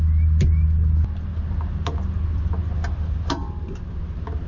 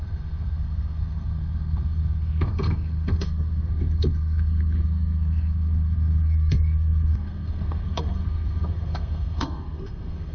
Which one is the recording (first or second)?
first